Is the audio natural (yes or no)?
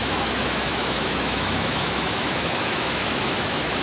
no